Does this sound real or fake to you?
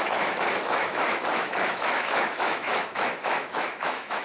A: fake